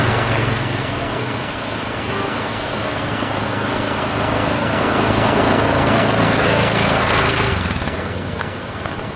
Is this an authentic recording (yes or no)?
no